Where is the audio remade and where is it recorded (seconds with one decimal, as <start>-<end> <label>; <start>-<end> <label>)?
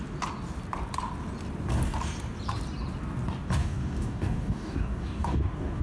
0.0-3.6 recorded; 3.6-5.8 remade